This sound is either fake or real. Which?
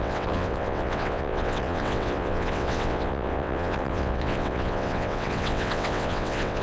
fake